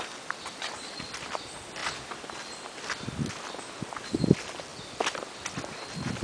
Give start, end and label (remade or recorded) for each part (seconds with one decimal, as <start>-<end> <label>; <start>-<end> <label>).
0.0-6.2 recorded